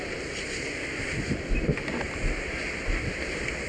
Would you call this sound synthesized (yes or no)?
no